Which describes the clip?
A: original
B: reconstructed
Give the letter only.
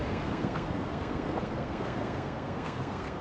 B